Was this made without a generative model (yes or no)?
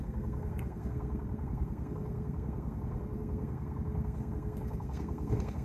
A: no